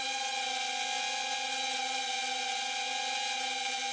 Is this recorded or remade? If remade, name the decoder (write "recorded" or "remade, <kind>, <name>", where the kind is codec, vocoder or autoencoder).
recorded